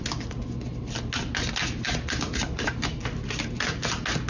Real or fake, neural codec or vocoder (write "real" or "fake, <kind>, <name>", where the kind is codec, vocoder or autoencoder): real